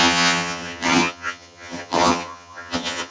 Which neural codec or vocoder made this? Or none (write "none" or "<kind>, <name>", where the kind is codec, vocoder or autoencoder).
vocoder, HiFi-GAN